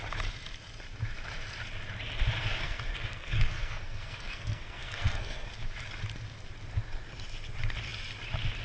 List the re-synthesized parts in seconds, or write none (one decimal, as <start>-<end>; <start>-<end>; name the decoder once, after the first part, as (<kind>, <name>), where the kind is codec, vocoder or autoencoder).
2.4-5.5 (codec, SNAC)